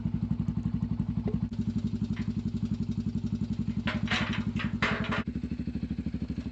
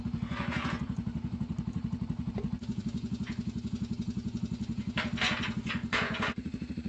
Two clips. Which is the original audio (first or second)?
first